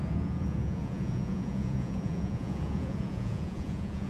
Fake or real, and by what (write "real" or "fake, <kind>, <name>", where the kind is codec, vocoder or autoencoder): fake, vocoder, Vocos